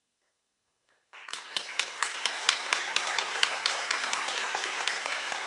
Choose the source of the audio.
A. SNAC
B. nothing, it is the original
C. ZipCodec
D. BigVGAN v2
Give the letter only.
A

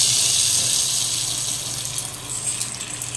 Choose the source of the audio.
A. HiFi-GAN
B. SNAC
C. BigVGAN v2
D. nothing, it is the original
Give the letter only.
D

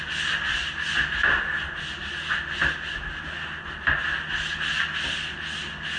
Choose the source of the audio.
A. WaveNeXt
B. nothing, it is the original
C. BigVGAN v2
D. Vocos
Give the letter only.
B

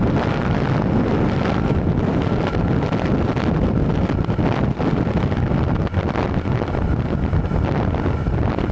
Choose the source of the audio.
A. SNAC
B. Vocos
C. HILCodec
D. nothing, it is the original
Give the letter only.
D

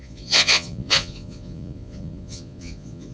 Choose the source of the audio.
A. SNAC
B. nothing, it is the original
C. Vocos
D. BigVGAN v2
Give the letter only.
C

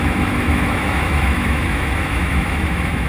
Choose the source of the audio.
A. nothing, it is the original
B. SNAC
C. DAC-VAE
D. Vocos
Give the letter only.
C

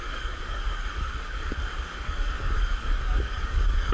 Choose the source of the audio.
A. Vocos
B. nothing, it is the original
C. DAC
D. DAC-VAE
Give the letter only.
C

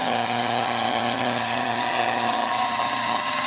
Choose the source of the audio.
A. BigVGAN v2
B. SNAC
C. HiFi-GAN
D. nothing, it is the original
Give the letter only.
C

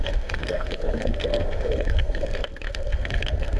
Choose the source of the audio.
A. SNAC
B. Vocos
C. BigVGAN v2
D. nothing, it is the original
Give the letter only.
A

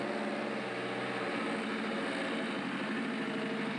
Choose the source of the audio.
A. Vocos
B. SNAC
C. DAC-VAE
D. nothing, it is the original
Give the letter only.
D